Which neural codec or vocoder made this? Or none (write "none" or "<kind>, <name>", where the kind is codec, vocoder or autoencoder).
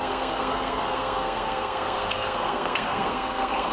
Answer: codec, SNAC